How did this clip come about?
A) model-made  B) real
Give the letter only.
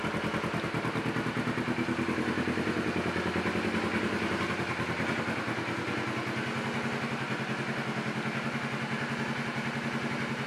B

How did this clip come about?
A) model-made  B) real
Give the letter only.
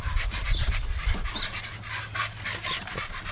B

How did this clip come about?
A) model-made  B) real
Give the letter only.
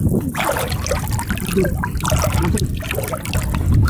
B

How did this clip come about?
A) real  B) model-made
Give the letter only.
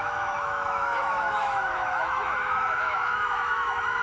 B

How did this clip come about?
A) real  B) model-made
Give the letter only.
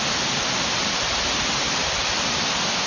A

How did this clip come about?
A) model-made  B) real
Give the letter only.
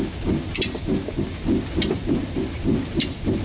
B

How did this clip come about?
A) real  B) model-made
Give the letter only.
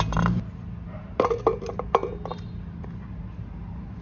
A